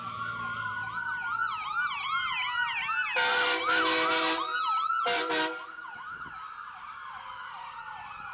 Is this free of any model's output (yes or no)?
yes